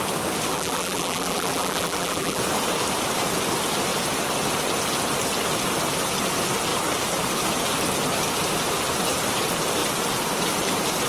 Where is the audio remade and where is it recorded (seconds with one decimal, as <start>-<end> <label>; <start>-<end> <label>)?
0.0-0.5 recorded; 0.5-2.4 remade; 2.4-11.1 recorded

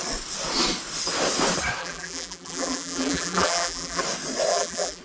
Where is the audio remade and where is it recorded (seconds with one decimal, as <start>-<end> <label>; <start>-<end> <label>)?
0.0-1.8 recorded; 1.8-4.0 remade; 4.0-4.5 recorded; 4.5-5.0 remade

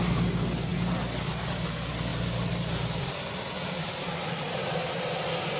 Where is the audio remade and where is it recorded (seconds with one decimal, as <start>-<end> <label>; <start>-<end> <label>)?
0.0-5.6 recorded